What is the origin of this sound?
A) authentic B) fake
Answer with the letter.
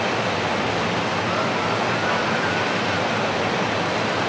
A